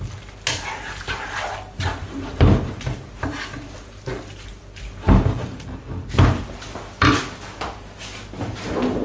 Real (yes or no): yes